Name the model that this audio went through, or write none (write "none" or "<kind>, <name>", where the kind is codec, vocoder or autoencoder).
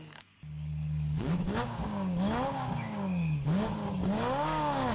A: codec, DAC